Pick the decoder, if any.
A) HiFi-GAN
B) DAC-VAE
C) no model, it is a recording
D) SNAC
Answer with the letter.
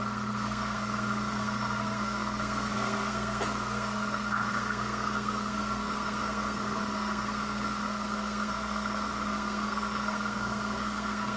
D